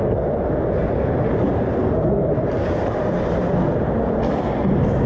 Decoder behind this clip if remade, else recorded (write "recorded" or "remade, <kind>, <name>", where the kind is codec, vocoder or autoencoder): recorded